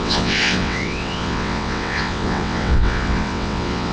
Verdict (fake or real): fake